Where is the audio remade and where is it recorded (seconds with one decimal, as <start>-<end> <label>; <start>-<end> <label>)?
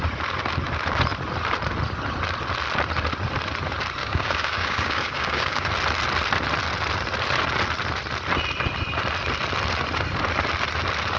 0.0-4.0 recorded; 4.0-5.7 remade; 5.7-11.2 recorded